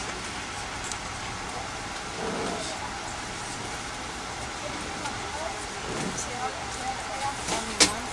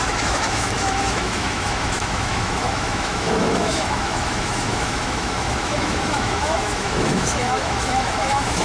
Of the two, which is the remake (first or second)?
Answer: second